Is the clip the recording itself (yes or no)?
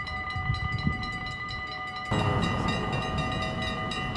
yes